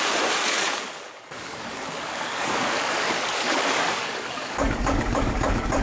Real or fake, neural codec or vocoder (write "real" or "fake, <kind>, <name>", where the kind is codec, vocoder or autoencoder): fake, codec, DAC